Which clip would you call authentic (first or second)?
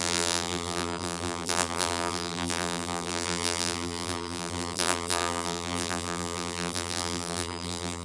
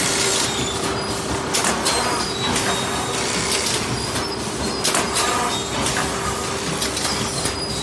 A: second